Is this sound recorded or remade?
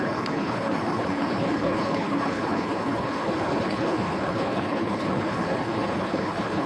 remade